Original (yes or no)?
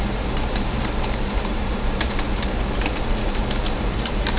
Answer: no